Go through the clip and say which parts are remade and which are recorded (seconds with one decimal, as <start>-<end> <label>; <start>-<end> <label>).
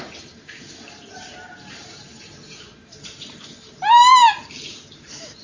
0.0-4.1 remade; 4.1-4.9 recorded; 4.9-5.4 remade